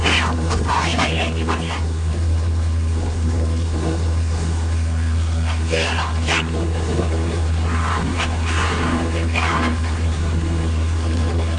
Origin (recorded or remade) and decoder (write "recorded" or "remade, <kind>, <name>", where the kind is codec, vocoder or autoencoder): remade, codec, SNAC